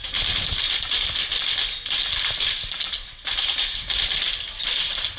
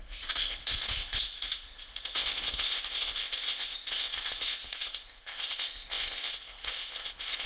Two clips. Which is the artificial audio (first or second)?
second